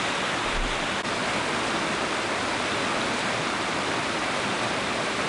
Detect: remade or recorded recorded